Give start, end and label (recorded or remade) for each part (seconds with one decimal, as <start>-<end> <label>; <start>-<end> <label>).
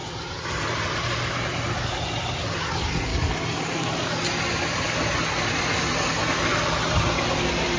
0.0-7.8 recorded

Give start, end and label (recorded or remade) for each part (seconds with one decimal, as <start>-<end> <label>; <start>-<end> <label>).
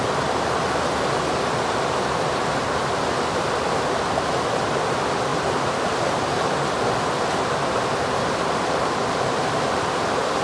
0.0-10.4 recorded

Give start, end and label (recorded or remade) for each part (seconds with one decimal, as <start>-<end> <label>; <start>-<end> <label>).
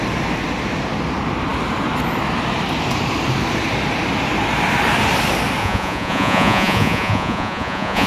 0.0-5.6 recorded; 5.6-8.1 remade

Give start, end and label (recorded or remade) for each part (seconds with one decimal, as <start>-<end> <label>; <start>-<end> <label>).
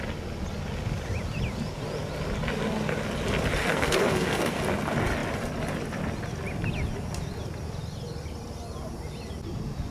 0.0-3.6 recorded; 3.6-4.6 remade; 4.6-9.9 recorded